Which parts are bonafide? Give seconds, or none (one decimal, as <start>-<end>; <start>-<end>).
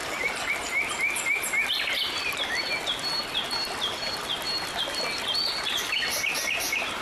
0.0-7.0